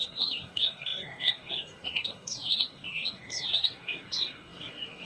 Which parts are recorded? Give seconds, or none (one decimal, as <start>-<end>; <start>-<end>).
none